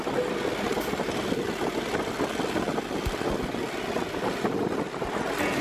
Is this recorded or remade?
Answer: recorded